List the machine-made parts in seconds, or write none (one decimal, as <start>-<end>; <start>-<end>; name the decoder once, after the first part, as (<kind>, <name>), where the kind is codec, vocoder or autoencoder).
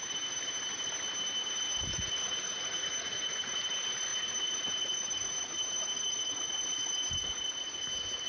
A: 1.9-3.6 (vocoder, Vocos); 4.1-7.1